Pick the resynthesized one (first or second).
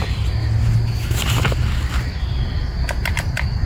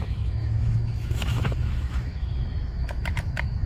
second